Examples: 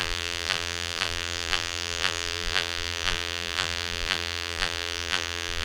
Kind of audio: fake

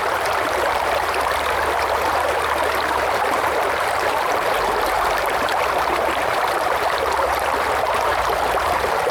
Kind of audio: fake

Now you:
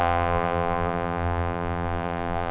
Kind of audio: fake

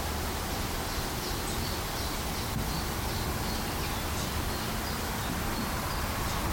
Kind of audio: real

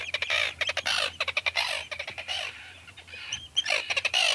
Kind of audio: fake